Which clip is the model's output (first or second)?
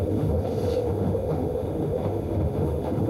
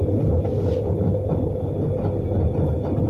first